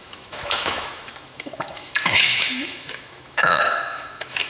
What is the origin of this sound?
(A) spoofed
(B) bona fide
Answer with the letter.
A